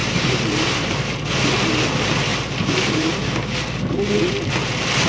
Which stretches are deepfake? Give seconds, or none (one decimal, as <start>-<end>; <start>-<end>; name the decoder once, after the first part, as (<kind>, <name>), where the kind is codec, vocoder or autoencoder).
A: 0.0-1.2 (vocoder, BigVGAN v2); 2.3-3.9